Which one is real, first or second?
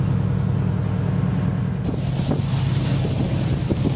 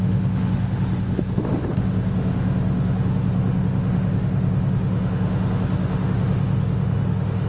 first